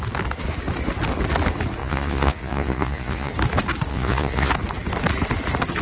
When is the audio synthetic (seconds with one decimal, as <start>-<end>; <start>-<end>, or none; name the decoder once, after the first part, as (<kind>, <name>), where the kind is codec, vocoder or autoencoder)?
1.8-3.3 (vocoder, Vocos); 3.9-4.5

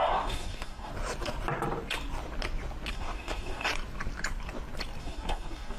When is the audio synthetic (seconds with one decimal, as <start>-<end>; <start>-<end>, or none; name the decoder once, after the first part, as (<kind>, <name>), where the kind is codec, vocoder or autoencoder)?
0.0-0.9 (codec, DAC); 2.9-3.7; 5.0-5.8

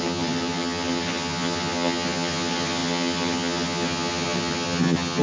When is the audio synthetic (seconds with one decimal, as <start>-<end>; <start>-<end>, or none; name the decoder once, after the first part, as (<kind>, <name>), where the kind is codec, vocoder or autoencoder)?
0.0-5.2 (vocoder, HiFi-GAN)